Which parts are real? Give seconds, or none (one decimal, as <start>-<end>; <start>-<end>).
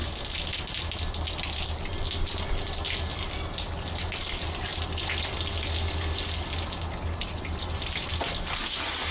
0.0-9.1